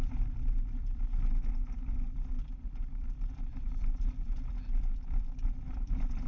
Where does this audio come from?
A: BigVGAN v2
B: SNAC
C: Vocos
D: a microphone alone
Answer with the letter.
A